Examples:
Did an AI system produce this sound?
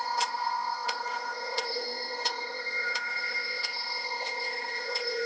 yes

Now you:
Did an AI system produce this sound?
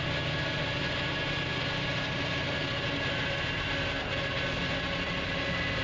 no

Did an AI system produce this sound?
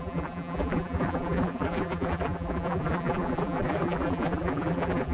yes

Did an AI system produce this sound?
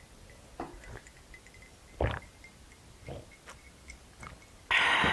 no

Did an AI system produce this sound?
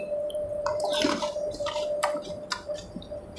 yes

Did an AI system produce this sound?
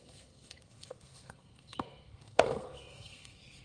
yes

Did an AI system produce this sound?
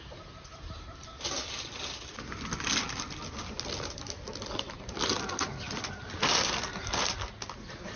no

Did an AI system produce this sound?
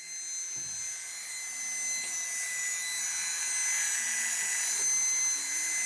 no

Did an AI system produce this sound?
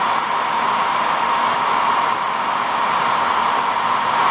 no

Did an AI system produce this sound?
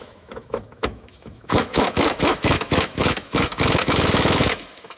yes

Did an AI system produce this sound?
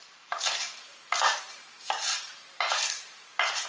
yes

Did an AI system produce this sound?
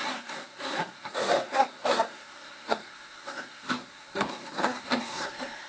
yes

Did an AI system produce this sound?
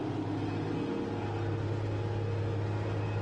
no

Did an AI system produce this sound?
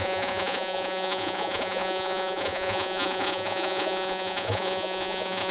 yes